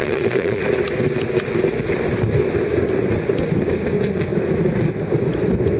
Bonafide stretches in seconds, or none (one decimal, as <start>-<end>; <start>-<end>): 0.6-5.8